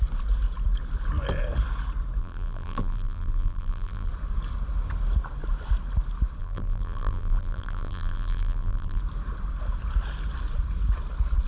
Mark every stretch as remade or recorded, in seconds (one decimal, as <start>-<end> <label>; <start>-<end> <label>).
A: 0.0-2.2 recorded; 2.2-4.1 remade; 4.1-6.4 recorded; 6.4-9.0 remade; 9.0-11.5 recorded